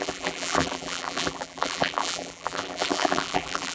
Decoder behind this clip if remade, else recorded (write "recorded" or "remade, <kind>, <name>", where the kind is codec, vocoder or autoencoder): remade, vocoder, BigVGAN v2